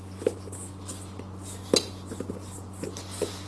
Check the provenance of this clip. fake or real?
real